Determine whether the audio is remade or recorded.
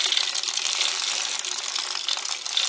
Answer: recorded